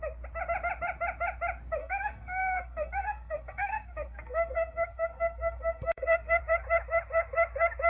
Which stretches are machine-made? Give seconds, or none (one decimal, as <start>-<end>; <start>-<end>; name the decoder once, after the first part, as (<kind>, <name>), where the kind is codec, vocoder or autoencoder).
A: 1.8-6.4 (codec, SNAC)